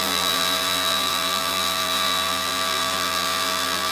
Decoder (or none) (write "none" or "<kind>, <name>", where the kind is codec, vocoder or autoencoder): vocoder, BigVGAN v2